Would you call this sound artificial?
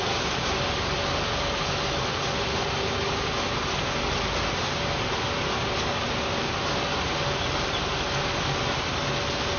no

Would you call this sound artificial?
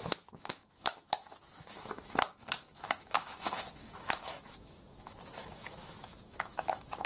yes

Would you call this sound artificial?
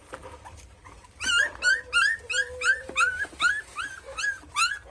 no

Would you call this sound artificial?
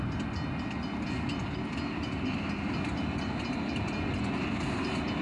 no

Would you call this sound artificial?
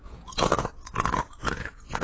yes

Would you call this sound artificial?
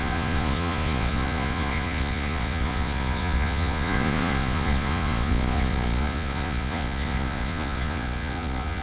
yes